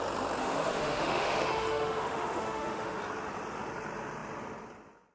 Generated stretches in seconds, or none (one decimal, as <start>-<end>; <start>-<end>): 0.4-3.0